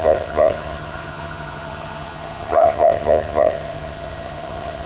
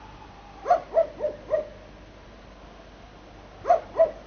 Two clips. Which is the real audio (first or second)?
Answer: second